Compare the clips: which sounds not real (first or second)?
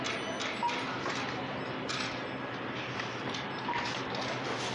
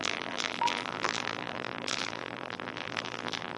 second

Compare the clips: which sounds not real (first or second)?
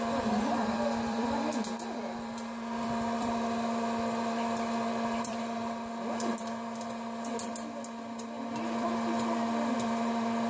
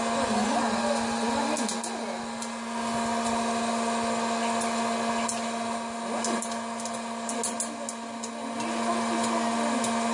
first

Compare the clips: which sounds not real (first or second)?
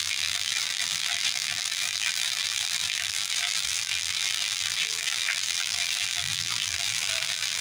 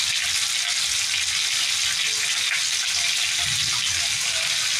first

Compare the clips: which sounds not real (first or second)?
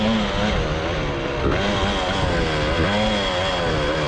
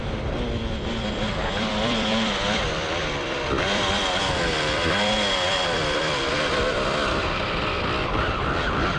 second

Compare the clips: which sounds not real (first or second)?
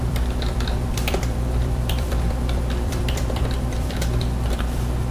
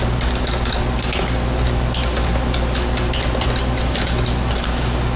first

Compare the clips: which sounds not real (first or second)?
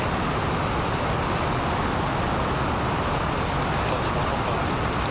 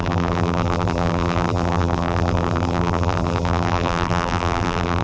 second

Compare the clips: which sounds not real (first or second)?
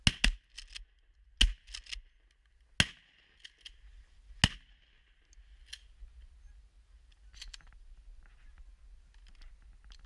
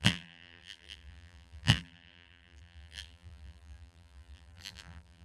second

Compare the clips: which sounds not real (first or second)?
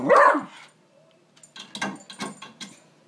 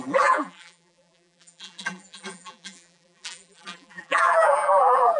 second